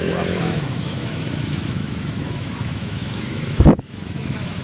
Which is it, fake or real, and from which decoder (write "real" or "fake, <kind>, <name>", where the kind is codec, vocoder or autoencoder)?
fake, autoencoder, DAC-VAE